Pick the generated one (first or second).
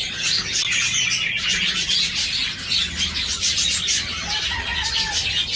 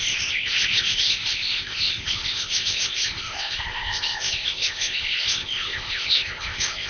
second